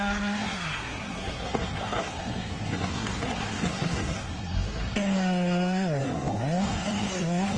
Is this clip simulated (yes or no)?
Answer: yes